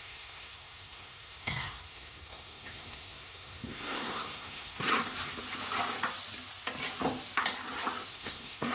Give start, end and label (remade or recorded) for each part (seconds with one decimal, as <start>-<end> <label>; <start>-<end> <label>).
0.0-4.9 remade; 4.9-8.1 recorded; 8.1-8.7 remade